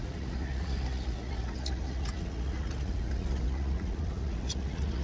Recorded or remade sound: remade